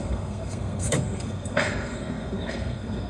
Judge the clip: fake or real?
fake